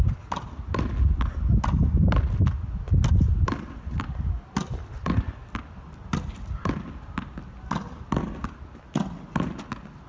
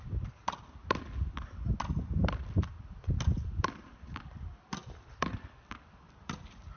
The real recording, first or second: first